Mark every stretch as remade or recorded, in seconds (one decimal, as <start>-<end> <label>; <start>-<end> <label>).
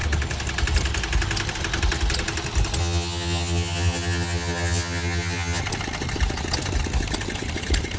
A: 0.0-2.8 recorded; 2.8-5.6 remade; 5.6-8.0 recorded